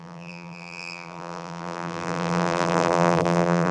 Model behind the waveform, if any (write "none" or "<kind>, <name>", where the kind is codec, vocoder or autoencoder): vocoder, BigVGAN v2